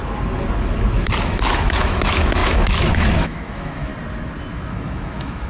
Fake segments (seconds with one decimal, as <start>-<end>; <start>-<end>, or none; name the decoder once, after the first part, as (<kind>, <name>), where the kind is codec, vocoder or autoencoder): 1.3-3.9 (autoencoder, DAC-VAE); 4.7-5.5